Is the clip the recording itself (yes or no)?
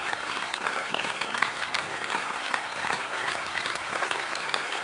no